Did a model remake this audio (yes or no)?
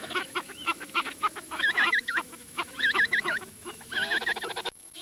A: yes